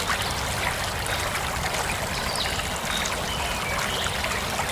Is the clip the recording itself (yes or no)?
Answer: yes